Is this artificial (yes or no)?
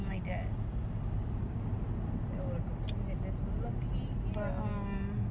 no